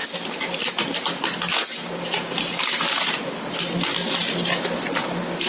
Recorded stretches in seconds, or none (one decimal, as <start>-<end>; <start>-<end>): 0.0-5.5